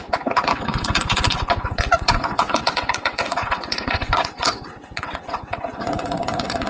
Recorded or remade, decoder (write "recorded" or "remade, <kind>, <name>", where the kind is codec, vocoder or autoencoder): remade, vocoder, WaveNeXt